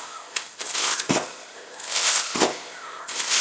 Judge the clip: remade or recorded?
remade